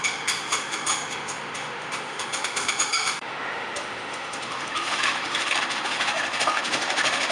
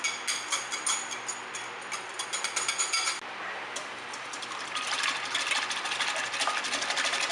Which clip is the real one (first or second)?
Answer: second